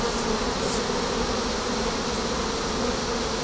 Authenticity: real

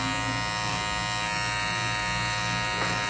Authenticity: real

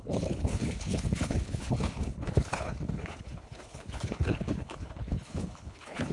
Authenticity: fake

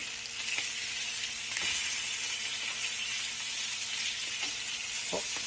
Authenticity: real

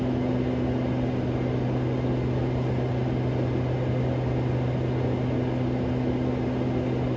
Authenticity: real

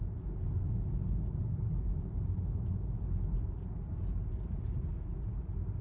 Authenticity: real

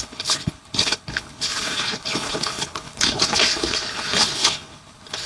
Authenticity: fake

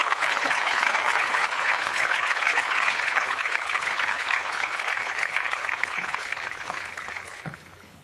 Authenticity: fake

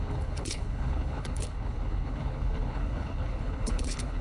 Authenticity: fake